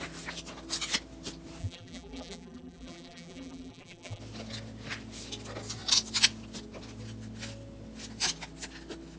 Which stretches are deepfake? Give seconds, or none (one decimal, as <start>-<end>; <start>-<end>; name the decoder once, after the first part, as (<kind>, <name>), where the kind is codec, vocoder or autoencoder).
1.6-4.2 (vocoder, BigVGAN v2)